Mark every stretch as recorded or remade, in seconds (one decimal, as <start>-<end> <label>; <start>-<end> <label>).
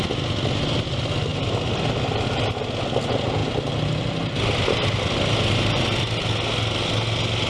0.0-7.5 recorded